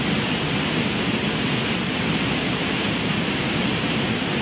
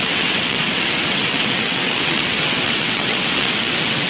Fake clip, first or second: second